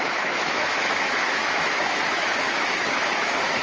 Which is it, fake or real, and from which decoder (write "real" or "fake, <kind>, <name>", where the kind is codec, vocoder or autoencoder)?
fake, autoencoder, DAC-VAE